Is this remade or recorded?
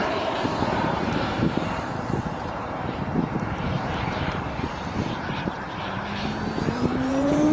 remade